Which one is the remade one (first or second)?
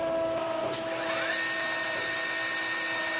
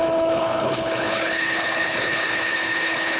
second